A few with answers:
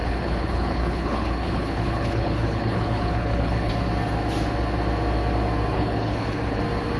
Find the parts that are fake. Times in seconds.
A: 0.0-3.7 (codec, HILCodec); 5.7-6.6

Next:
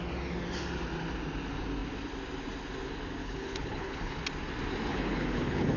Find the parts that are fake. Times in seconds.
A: 3.2-4.2 (codec, HILCodec); 4.9-5.8

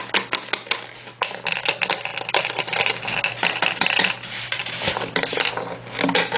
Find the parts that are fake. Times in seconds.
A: none

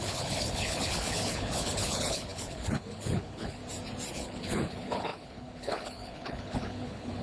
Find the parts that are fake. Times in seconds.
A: 0.0-3.6 (codec, HILCodec); 4.1-7.2